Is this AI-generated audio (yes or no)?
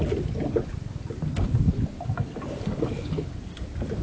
no